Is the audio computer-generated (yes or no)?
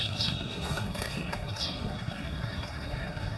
yes